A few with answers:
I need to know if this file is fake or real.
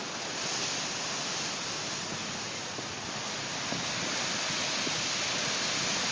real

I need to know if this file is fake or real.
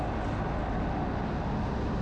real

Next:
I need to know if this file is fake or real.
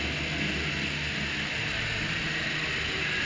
real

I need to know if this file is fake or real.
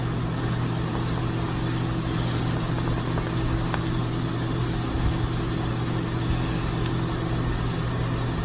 real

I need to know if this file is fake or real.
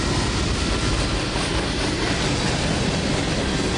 real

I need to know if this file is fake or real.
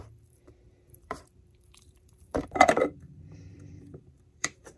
fake